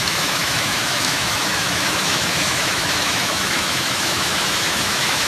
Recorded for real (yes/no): no